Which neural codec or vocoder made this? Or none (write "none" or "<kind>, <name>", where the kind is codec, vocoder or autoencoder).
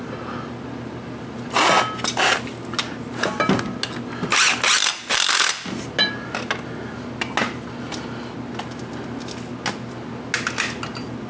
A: none